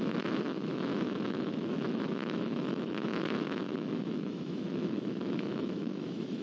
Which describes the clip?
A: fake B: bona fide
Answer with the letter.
A